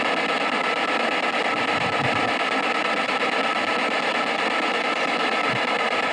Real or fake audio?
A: real